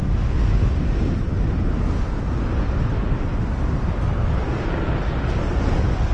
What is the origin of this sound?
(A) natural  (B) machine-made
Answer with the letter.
A